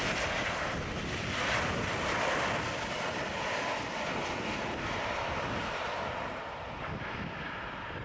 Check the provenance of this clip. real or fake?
real